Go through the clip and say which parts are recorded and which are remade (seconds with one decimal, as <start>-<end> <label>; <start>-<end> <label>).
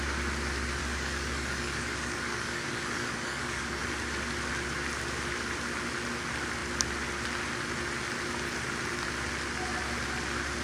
0.0-0.8 recorded; 0.8-3.8 remade; 3.8-10.6 recorded